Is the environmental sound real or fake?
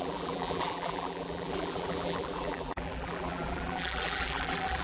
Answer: fake